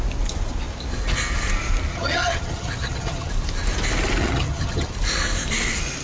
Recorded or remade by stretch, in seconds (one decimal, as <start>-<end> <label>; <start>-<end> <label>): 0.0-1.9 recorded; 1.9-3.3 remade; 3.3-4.2 recorded; 4.2-4.9 remade; 4.9-6.0 recorded